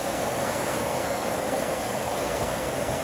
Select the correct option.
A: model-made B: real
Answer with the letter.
A